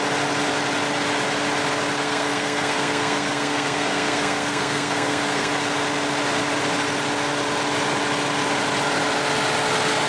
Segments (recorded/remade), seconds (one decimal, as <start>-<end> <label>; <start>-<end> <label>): 0.0-2.0 recorded; 2.0-5.5 remade; 5.5-10.1 recorded